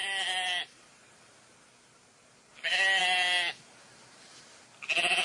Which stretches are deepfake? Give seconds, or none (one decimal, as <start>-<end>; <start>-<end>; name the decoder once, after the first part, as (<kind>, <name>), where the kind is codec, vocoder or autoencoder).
none